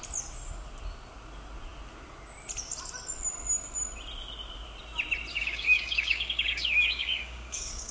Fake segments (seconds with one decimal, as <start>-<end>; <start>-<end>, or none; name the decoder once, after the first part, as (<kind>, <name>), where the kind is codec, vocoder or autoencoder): 5.3-7.9 (codec, DAC)